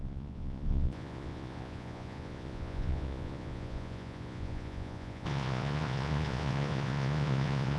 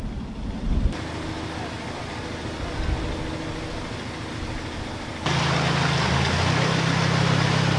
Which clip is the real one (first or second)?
second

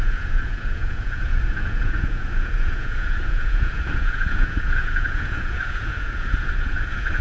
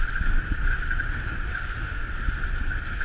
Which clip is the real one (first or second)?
second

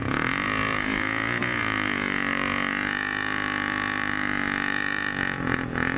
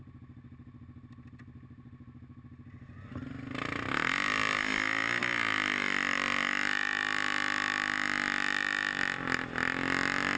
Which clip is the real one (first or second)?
second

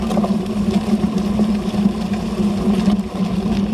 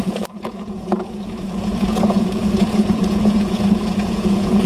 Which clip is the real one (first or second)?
first